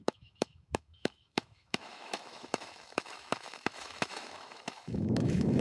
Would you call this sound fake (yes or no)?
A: yes